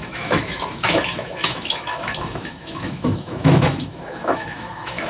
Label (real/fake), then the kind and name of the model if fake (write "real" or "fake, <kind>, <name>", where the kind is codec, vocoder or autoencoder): fake, autoencoder, DAC-VAE